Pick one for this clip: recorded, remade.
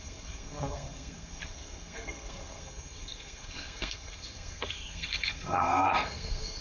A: remade